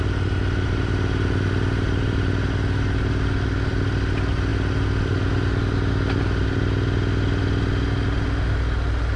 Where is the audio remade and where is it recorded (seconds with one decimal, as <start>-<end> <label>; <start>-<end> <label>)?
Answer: 0.0-9.2 recorded

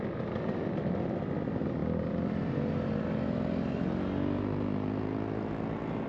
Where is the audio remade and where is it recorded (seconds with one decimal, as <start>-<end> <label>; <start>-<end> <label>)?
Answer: 0.0-6.1 recorded